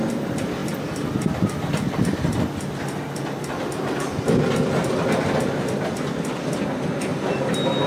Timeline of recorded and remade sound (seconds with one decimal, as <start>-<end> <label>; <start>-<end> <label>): 0.0-0.6 recorded; 0.6-1.1 remade; 1.1-7.1 recorded; 7.1-7.9 remade